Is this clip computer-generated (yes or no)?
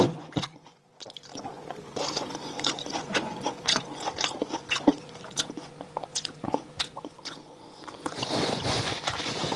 yes